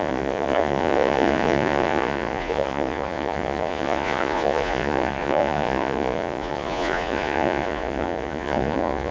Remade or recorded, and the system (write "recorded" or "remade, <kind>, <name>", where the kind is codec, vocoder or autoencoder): remade, vocoder, Vocos